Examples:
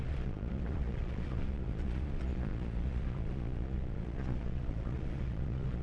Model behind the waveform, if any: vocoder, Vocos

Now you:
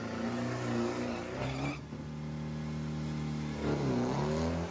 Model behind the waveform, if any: none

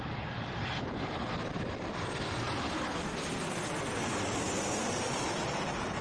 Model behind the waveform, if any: none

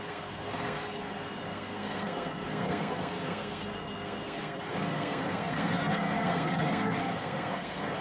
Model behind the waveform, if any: codec, SNAC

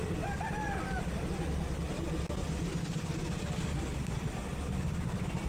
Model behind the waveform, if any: none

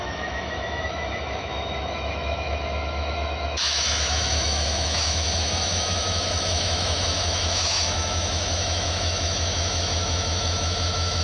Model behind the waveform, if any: autoencoder, DAC-VAE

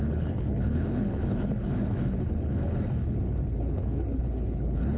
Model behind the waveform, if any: codec, HILCodec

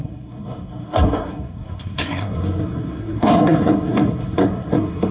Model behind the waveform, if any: codec, SNAC